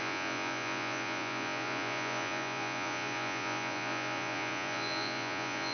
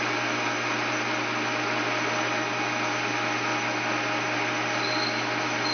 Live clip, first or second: second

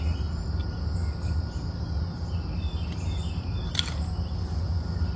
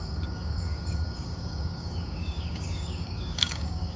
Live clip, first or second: first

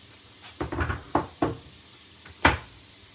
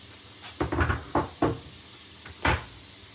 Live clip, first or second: second